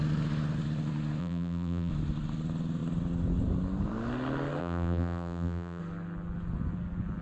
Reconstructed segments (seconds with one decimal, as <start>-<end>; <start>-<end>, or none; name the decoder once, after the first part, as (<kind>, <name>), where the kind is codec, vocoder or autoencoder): 1.2-1.9 (vocoder, BigVGAN v2); 4.6-5.8